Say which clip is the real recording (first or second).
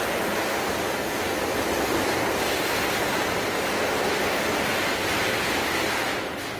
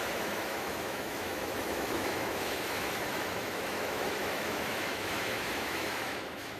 first